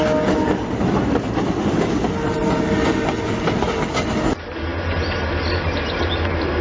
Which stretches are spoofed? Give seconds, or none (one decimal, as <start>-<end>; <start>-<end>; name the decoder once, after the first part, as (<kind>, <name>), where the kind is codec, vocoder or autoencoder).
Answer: none